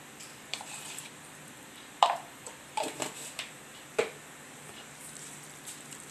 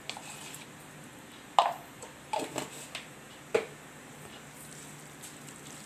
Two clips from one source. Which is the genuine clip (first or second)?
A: second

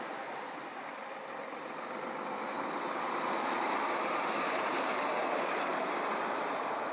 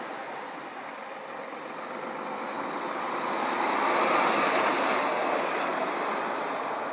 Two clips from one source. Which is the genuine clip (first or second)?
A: second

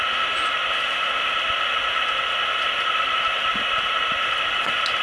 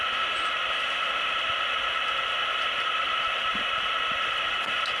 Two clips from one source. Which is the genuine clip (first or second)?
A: first